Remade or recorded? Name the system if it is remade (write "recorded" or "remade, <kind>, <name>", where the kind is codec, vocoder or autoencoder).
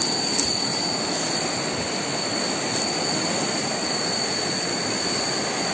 recorded